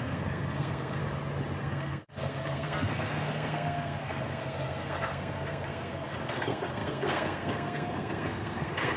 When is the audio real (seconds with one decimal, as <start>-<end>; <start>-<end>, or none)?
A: 1.0-1.6

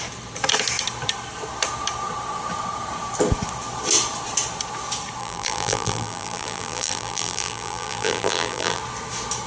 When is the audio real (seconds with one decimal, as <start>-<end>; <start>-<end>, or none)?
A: 0.0-5.2; 8.8-9.5

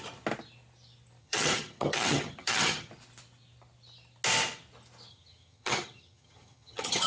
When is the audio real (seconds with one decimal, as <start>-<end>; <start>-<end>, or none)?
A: 0.0-1.2; 2.9-5.1

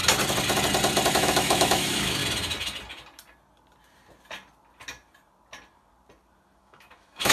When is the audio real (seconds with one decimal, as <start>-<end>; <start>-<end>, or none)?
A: 0.0-1.1; 2.2-6.6